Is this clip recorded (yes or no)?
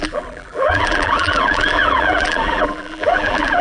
no